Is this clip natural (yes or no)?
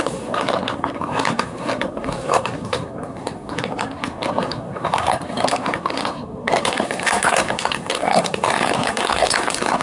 no